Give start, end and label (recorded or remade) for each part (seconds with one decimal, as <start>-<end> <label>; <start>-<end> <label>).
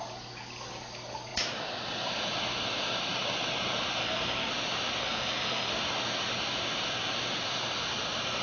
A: 0.0-4.0 recorded; 4.0-4.5 remade; 4.5-5.0 recorded; 5.0-5.7 remade; 5.7-8.4 recorded